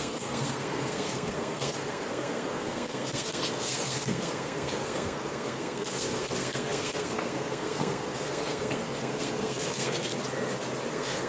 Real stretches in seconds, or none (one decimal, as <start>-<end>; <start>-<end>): 10.1-10.9